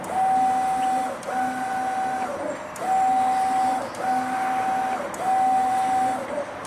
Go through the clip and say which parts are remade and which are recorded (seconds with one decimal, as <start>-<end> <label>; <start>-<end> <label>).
0.0-6.7 recorded

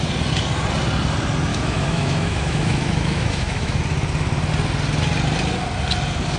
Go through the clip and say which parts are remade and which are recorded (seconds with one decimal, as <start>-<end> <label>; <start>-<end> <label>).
0.0-1.5 recorded; 1.5-3.8 remade; 3.8-6.4 recorded

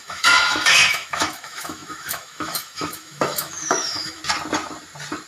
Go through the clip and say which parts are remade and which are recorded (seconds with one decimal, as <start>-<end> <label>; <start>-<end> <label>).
0.0-4.2 remade; 4.2-5.3 recorded

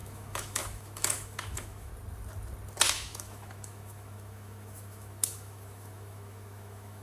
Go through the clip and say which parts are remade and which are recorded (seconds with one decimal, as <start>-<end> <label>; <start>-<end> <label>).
0.0-1.9 remade; 1.9-2.9 recorded; 2.9-7.0 remade

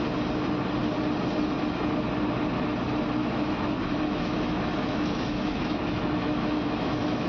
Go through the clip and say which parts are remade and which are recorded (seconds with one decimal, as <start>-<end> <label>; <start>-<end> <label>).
0.0-3.2 recorded; 3.2-7.3 remade

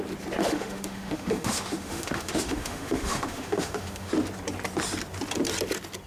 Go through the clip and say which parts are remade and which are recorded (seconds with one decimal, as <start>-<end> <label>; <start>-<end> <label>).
0.0-0.4 recorded; 0.4-4.1 remade; 4.1-6.1 recorded